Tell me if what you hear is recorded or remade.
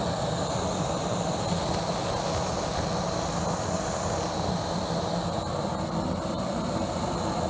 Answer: recorded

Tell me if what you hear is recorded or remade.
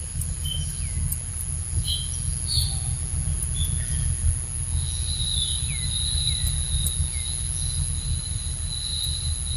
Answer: recorded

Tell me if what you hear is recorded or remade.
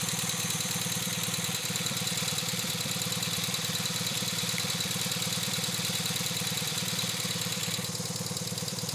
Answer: remade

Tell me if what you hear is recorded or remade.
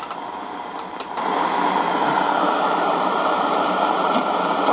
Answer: remade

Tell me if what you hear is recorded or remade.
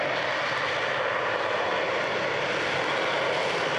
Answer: recorded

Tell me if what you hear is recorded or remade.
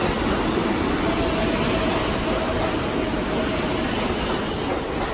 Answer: recorded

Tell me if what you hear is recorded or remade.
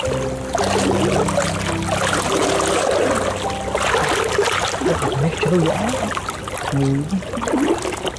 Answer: recorded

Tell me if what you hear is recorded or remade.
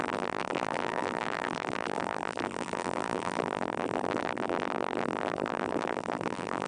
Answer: remade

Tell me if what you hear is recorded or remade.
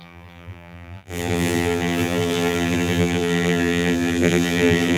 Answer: remade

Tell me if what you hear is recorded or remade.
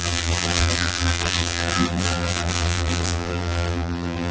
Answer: remade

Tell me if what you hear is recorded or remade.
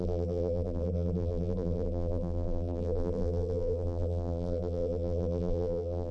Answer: remade